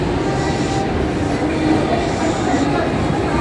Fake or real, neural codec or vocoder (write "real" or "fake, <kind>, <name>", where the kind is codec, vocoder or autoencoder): real